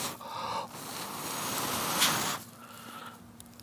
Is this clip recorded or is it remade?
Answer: recorded